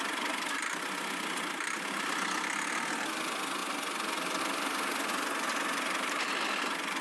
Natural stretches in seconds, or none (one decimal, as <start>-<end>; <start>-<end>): 0.0-7.0